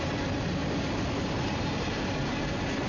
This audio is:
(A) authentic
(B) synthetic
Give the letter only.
A